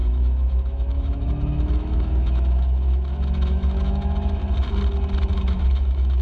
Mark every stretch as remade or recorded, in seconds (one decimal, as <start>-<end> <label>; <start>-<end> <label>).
0.0-4.4 remade; 4.4-5.3 recorded; 5.3-6.2 remade